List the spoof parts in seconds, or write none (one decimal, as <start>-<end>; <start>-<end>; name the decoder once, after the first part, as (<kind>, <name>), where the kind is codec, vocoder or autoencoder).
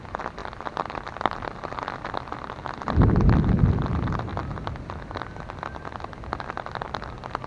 none